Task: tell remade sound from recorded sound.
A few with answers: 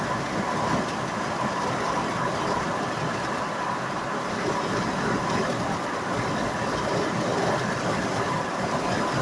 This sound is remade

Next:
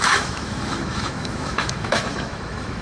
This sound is remade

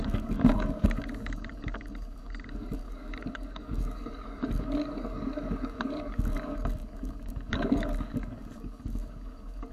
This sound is remade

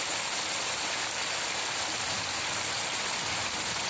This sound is recorded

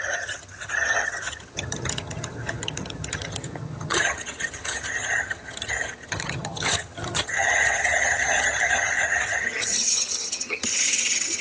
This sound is remade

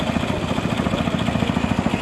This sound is recorded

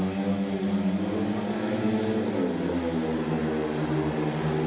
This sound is recorded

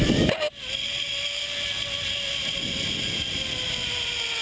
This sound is recorded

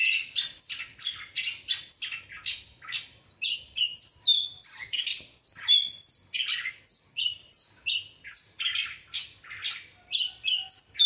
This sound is recorded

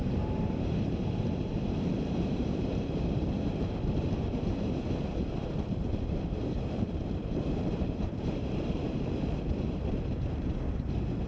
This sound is remade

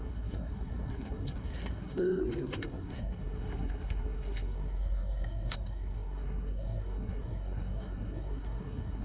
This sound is remade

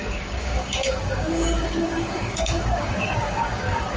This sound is remade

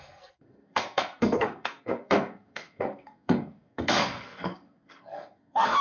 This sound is remade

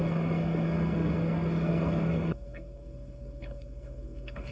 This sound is remade